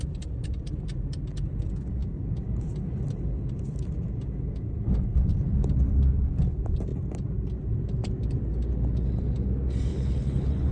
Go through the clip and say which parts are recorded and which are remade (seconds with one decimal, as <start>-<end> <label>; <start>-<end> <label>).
0.0-9.9 recorded; 9.9-10.7 remade